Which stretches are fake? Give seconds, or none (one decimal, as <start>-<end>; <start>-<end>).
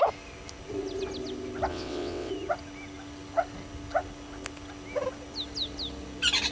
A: 1.7-2.3